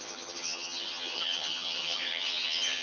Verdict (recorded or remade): remade